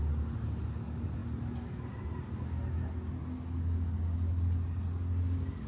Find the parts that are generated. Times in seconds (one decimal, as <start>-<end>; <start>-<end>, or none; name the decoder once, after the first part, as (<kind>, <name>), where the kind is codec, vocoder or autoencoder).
none